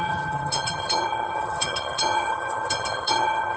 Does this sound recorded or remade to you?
remade